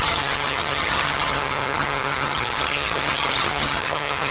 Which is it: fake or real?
fake